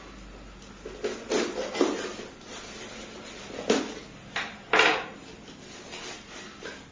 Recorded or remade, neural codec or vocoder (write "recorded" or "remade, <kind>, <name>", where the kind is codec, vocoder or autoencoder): recorded